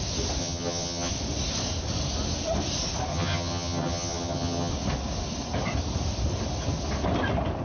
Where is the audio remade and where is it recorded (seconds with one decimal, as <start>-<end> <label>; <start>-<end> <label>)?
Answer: 0.0-0.4 recorded; 0.4-1.1 remade; 1.1-3.1 recorded; 3.1-4.7 remade; 4.7-7.6 recorded